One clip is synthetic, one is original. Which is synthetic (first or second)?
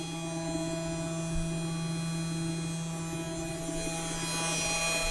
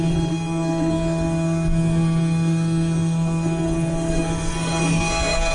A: second